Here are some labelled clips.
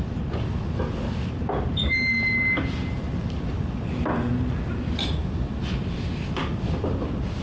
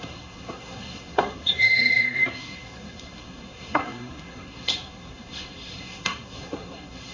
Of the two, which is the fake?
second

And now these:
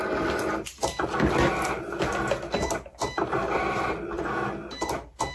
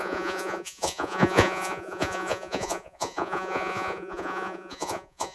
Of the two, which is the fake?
second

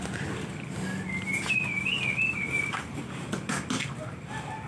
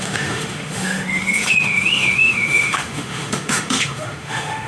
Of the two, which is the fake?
second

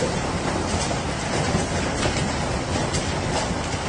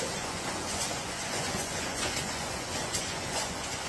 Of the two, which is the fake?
second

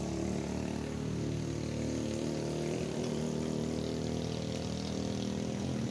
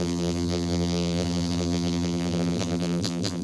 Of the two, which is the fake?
second